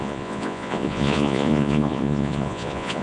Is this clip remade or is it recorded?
remade